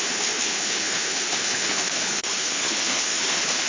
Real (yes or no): no